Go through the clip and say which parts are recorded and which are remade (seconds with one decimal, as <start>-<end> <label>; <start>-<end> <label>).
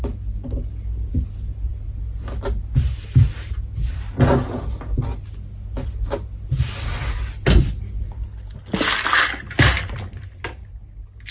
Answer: 0.0-11.3 recorded